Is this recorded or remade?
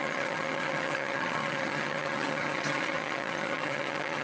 remade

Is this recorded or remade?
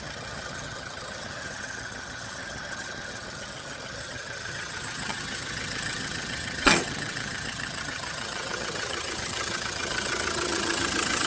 remade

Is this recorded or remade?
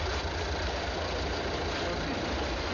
recorded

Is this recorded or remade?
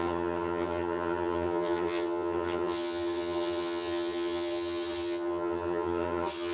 remade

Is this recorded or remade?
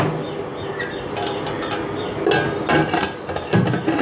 recorded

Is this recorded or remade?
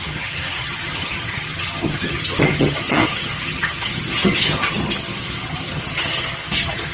remade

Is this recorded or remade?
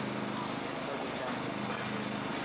recorded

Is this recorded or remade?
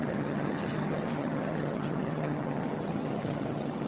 remade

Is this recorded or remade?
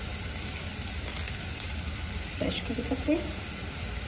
recorded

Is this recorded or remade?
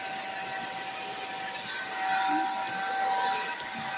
recorded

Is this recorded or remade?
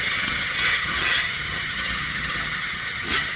remade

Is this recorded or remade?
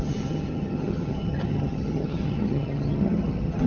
remade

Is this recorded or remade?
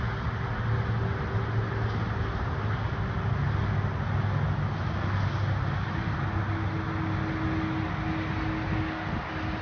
recorded